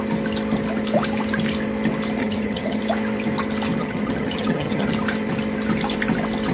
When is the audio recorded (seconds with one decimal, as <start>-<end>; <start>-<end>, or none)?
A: 0.0-2.2; 2.8-3.8; 4.9-6.5